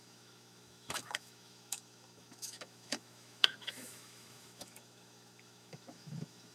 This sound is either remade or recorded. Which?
remade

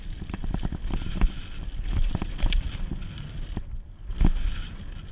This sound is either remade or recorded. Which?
recorded